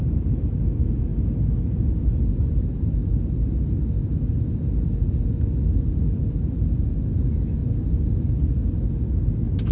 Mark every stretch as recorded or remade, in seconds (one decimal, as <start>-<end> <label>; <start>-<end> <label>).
0.0-9.7 recorded